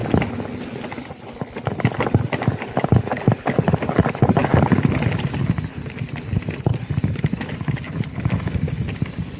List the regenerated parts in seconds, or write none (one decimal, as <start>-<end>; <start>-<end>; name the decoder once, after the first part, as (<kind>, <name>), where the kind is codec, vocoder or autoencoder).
none